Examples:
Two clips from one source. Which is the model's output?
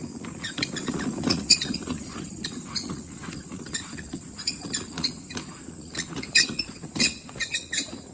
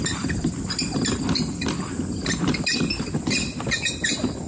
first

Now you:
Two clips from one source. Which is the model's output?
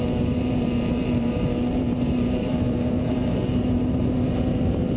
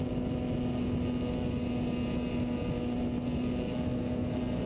first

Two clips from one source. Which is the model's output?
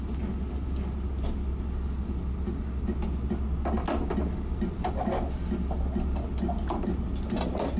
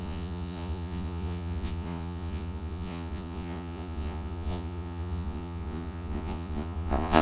second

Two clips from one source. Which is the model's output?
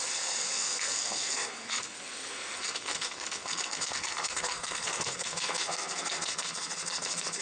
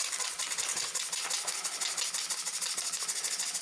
first